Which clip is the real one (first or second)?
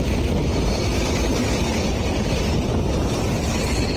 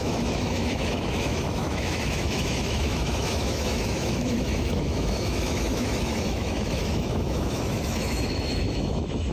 first